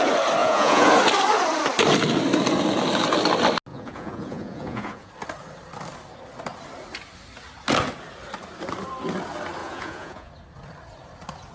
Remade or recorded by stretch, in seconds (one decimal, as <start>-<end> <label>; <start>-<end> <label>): 0.0-0.4 recorded; 0.4-0.9 remade; 0.9-3.7 recorded; 3.7-5.1 remade; 5.1-9.6 recorded; 9.6-10.3 remade; 10.3-11.5 recorded